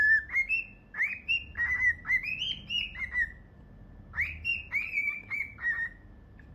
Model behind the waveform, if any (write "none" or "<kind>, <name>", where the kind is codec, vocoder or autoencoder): none